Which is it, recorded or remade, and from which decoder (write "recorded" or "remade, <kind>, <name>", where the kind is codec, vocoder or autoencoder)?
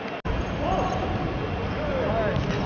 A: recorded